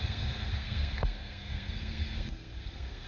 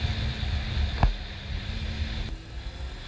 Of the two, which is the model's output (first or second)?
first